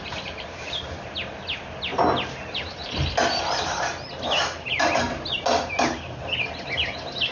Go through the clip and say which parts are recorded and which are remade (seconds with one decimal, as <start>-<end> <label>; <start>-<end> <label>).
0.0-7.3 recorded